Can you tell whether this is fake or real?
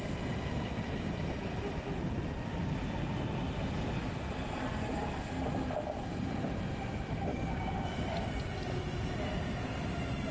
real